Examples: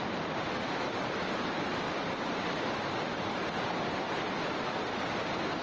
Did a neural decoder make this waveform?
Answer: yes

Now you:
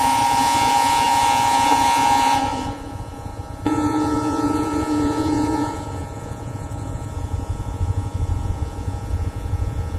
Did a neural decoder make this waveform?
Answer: yes